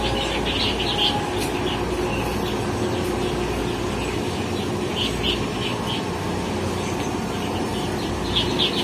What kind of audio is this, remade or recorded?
recorded